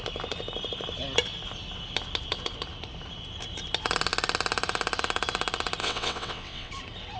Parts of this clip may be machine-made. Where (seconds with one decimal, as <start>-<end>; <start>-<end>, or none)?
5.8-6.7